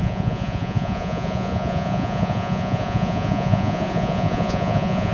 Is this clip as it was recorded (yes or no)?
no